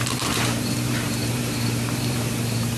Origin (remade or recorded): remade